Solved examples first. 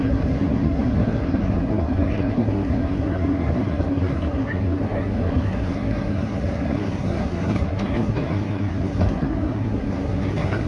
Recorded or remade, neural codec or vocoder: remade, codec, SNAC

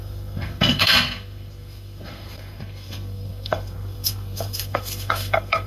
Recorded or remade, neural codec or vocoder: remade, codec, SNAC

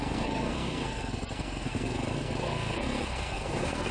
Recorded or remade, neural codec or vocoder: remade, codec, SNAC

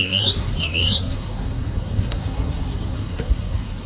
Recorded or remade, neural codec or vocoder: remade, codec, SNAC